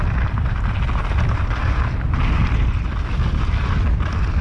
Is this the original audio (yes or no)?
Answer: yes